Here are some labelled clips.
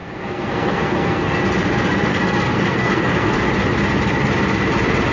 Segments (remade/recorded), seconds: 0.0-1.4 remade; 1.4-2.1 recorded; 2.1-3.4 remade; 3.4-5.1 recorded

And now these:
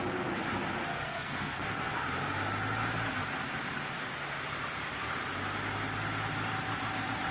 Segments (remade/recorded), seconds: 0.0-0.9 recorded; 0.9-1.9 remade; 1.9-7.3 recorded

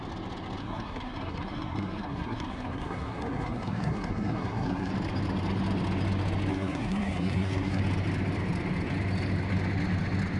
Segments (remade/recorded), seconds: 0.0-0.6 recorded; 0.6-4.9 remade; 4.9-6.5 recorded; 6.5-7.8 remade; 7.8-10.4 recorded

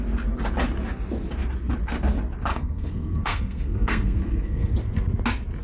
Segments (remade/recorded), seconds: 0.0-2.5 recorded; 2.5-4.7 remade; 4.7-5.6 recorded

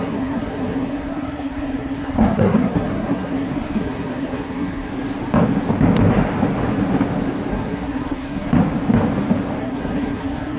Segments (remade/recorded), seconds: 0.0-4.9 remade; 4.9-7.5 recorded; 7.5-8.5 remade; 8.5-9.6 recorded; 9.6-10.6 remade

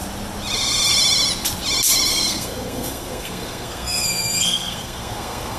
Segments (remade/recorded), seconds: 0.0-2.1 recorded; 2.1-5.6 remade

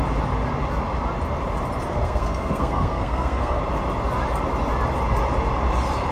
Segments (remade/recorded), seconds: 0.0-1.9 recorded; 1.9-3.6 remade; 3.6-6.1 recorded

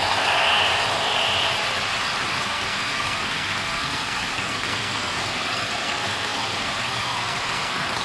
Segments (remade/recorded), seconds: 0.0-0.7 remade; 0.7-2.3 recorded; 2.3-8.0 remade